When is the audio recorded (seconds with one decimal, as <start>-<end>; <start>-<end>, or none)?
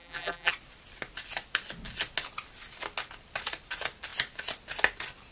0.5-5.3